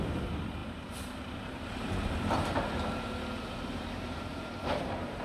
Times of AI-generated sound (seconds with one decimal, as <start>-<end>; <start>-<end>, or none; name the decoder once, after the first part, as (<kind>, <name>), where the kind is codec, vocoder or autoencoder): 0.0-4.3 (vocoder, BigVGAN v2); 4.8-5.2